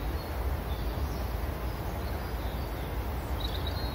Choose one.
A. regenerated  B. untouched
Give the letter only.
B